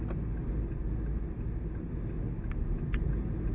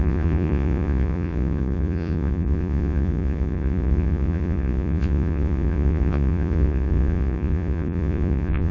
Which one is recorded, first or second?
first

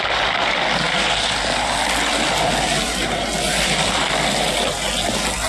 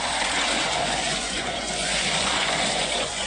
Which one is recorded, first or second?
first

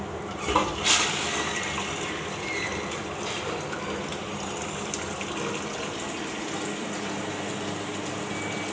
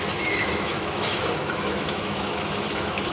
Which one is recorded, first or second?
first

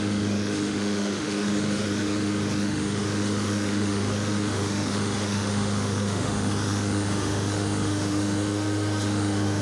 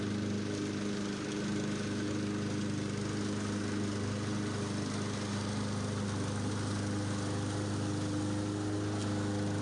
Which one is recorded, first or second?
second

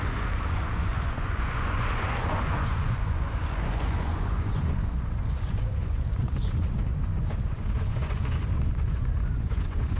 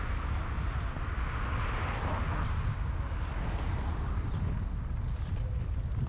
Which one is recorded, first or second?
second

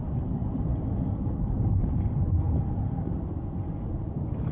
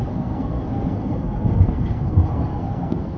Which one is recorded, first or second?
first